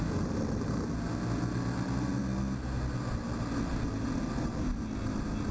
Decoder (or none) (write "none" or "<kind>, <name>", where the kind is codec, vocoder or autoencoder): none